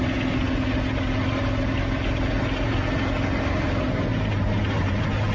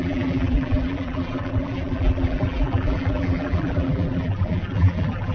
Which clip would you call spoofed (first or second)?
second